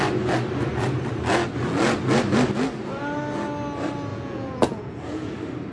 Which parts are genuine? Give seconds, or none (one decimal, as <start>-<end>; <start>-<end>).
0.0-4.1; 5.3-5.7